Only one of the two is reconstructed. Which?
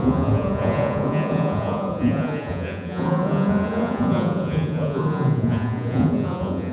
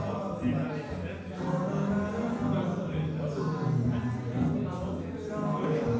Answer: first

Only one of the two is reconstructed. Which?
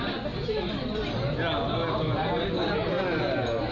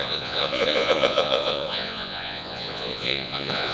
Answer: second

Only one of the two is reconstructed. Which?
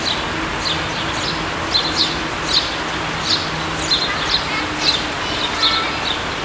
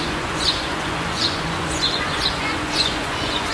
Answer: second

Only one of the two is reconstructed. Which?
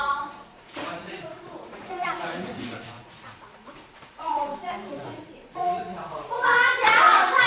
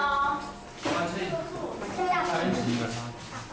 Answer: first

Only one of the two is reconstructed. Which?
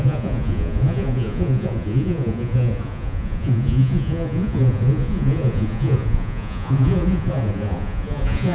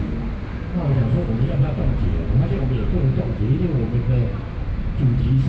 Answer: first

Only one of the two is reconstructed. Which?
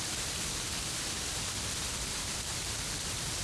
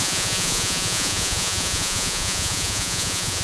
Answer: second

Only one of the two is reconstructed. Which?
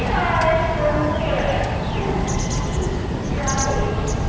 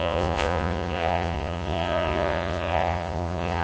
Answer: second